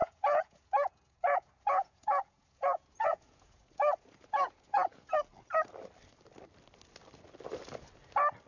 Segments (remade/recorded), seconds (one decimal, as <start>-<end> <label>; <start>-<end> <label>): 0.0-5.1 remade; 5.1-8.5 recorded